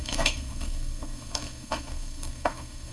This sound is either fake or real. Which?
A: fake